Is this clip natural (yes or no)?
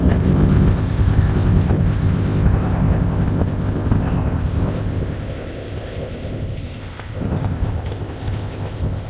no